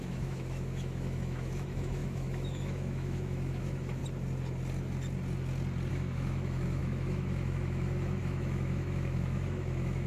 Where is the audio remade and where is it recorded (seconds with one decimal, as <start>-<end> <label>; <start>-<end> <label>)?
0.0-4.0 remade; 4.0-5.9 recorded; 5.9-10.1 remade